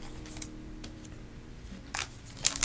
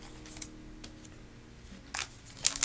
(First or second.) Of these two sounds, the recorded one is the second